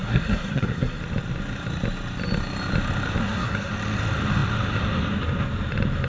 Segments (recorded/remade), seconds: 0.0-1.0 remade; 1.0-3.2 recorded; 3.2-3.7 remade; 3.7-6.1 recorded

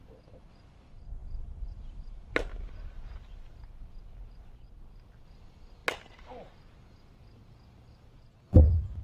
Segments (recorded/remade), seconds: 0.0-2.5 remade; 2.5-4.7 recorded; 4.7-5.8 remade; 5.8-9.0 recorded

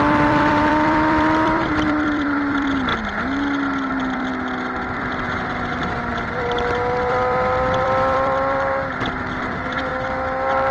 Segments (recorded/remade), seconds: 0.0-2.9 remade; 2.9-3.9 recorded; 3.9-4.3 remade; 4.3-4.8 recorded; 4.8-6.1 remade; 6.1-7.1 recorded; 7.1-9.9 remade; 9.9-10.7 recorded

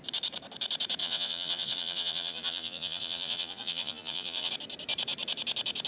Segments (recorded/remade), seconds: 0.0-1.0 recorded; 1.0-4.5 remade; 4.5-5.9 recorded

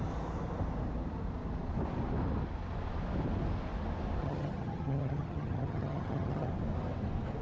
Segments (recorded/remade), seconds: 0.0-4.2 recorded; 4.2-6.5 remade; 6.5-7.4 recorded

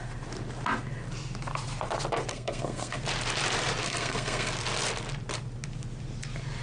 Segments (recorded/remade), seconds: 0.0-2.3 recorded; 2.3-3.0 remade; 3.0-3.8 recorded; 3.8-4.5 remade; 4.5-6.6 recorded

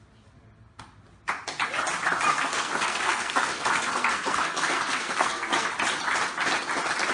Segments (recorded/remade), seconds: 0.0-2.3 recorded; 2.3-5.7 remade; 5.7-7.1 recorded

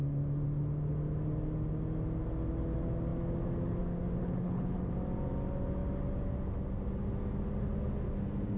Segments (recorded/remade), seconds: 0.0-4.2 recorded; 4.2-4.9 remade; 4.9-8.6 recorded